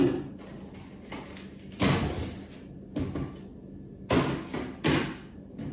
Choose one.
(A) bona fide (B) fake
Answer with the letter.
A